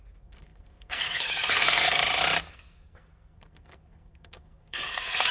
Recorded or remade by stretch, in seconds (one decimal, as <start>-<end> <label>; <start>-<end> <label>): 0.0-2.0 remade; 2.0-2.5 recorded; 2.5-5.3 remade